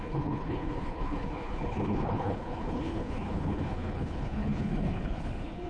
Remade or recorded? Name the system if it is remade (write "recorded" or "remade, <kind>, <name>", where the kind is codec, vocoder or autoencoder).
remade, codec, HILCodec